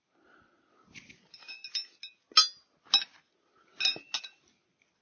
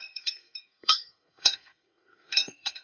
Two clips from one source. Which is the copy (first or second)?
second